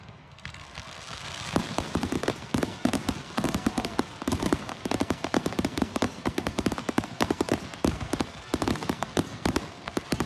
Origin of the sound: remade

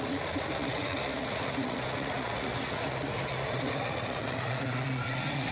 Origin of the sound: remade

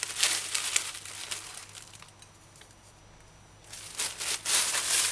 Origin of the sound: recorded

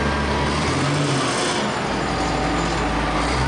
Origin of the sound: recorded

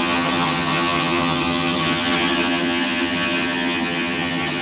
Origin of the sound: remade